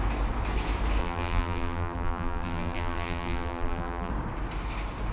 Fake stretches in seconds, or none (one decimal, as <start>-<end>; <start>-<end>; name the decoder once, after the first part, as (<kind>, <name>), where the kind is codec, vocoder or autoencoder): 1.0-4.1 (vocoder, BigVGAN v2)